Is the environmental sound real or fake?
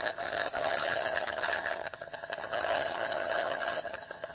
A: fake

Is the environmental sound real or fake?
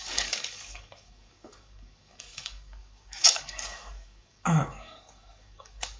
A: fake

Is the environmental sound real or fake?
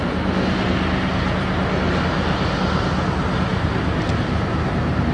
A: real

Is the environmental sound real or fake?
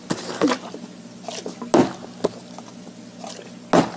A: real